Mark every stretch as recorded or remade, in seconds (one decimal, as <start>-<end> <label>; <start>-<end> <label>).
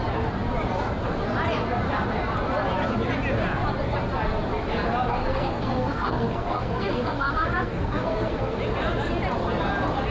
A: 0.0-5.2 recorded; 5.2-8.6 remade; 8.6-10.1 recorded